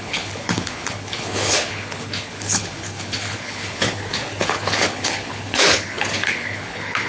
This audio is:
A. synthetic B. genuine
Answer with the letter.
A